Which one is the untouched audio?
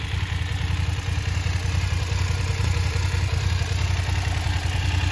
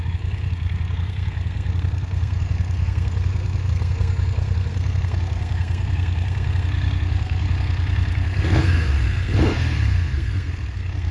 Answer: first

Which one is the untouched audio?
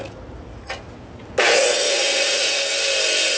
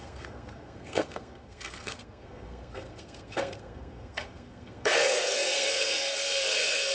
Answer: first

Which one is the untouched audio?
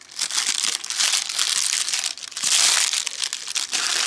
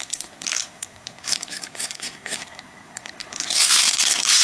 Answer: first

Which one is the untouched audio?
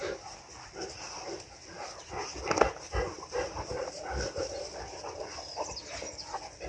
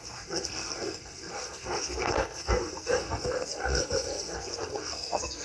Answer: first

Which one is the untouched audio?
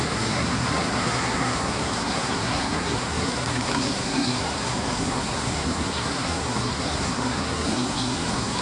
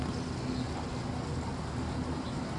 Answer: second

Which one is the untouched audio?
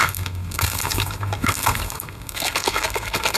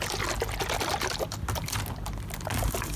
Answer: second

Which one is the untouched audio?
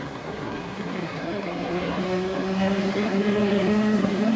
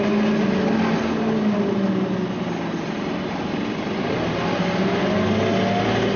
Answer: second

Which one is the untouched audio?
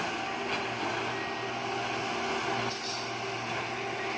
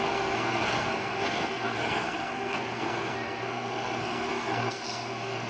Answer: first